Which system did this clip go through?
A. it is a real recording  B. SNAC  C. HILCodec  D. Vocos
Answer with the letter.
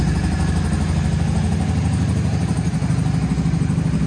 A